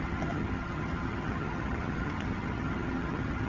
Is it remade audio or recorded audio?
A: remade